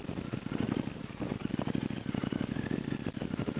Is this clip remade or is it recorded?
recorded